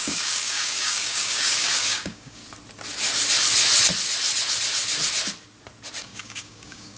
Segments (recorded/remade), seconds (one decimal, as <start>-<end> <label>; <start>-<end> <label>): 0.0-2.4 remade; 2.4-6.0 recorded; 6.0-7.0 remade